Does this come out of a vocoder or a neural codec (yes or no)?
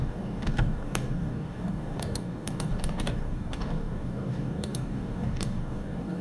yes